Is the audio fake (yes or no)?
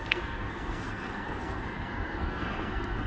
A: yes